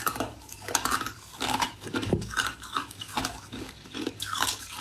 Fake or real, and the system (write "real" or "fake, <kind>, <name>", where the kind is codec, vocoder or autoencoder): fake, codec, DAC